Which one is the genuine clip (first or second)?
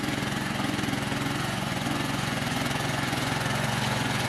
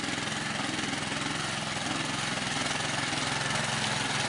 second